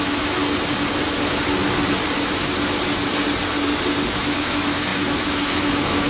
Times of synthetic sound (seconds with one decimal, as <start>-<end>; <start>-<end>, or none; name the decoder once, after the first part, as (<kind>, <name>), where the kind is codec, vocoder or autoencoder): 0.0-0.4 (autoencoder, DAC-VAE); 4.1-6.1